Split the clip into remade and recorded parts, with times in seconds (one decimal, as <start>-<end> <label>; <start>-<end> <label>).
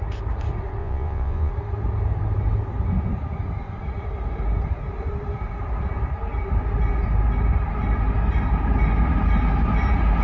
0.0-0.8 recorded; 0.8-1.5 remade; 1.5-10.2 recorded